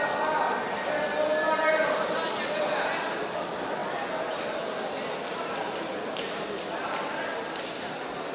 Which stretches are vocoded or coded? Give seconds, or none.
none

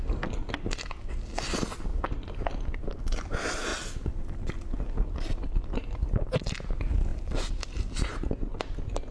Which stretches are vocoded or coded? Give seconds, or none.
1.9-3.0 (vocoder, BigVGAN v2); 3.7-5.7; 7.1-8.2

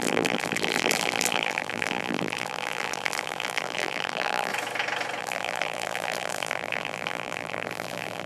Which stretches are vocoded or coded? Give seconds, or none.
0.0-4.5 (vocoder, BigVGAN v2); 5.2-8.3

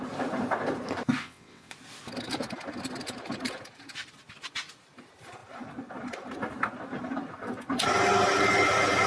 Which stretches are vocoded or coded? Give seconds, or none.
1.2-1.7 (vocoder, WaveNeXt)

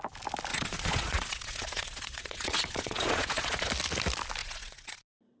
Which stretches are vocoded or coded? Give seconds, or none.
0.5-3.7 (vocoder, Vocos); 4.4-5.0